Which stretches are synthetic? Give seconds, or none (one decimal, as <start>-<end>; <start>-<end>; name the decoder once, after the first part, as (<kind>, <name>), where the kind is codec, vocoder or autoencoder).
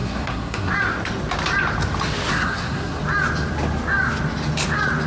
0.0-0.7 (codec, SNAC); 2.3-3.0